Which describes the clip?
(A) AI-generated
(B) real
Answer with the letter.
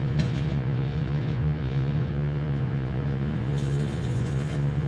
A